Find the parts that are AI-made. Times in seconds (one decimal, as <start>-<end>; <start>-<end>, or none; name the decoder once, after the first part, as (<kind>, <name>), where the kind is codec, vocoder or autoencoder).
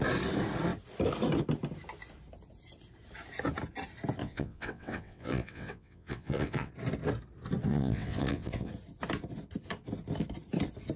4.2-6.7 (vocoder, WaveNeXt); 7.7-8.7